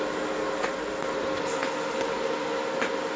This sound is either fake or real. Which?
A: real